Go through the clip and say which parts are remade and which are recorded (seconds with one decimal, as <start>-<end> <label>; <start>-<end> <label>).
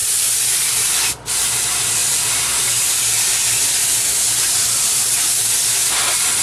0.0-1.6 remade; 1.6-2.0 recorded; 2.0-3.0 remade; 3.0-4.1 recorded; 4.1-5.9 remade; 5.9-6.4 recorded